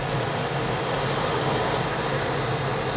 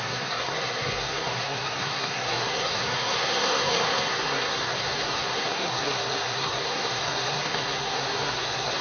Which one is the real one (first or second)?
first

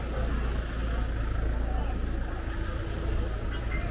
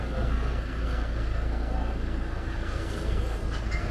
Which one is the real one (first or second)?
first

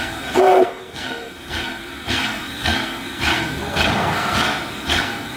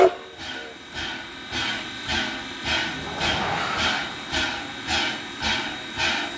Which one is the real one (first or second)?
second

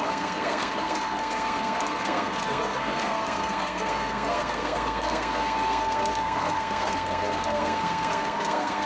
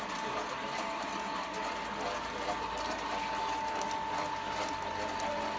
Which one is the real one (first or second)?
second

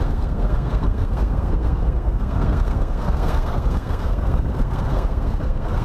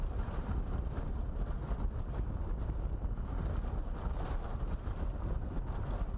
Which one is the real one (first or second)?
second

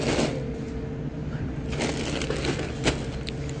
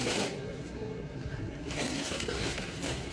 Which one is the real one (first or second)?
first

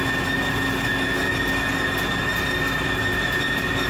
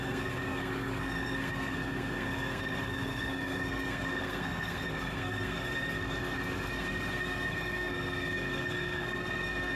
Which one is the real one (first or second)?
first